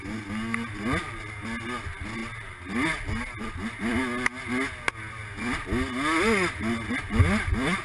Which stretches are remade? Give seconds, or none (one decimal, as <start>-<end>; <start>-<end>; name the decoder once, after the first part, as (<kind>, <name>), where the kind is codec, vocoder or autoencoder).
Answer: none